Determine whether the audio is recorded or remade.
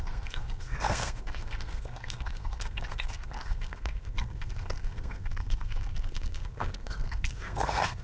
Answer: remade